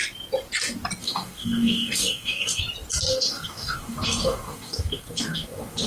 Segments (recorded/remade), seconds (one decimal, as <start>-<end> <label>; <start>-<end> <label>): 0.0-1.0 recorded; 1.0-2.6 remade; 2.6-3.1 recorded; 3.1-5.9 remade

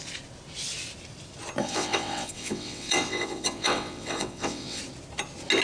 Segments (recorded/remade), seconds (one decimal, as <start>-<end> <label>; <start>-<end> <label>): 0.0-1.6 recorded; 1.6-4.8 remade; 4.8-5.6 recorded

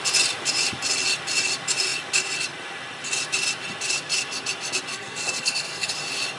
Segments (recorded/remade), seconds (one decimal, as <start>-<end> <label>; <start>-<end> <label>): 0.0-4.9 recorded; 4.9-5.9 remade; 5.9-6.4 recorded

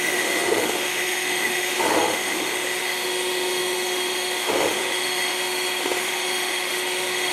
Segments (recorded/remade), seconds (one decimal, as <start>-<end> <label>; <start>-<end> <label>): 0.0-7.3 remade

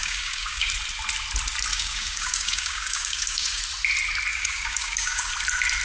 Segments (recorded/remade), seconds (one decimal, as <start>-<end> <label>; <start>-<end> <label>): 0.0-0.7 remade; 0.7-1.7 recorded; 1.7-3.6 remade; 3.6-4.3 recorded; 4.3-5.3 remade; 5.3-5.8 recorded

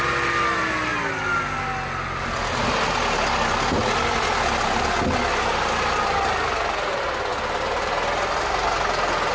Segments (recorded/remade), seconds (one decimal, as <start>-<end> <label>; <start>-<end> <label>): 0.0-9.3 recorded

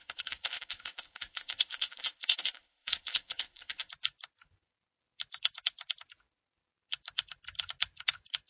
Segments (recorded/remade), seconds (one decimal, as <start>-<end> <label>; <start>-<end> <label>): 0.0-3.9 remade; 3.9-8.5 recorded